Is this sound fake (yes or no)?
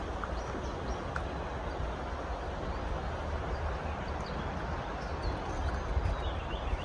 no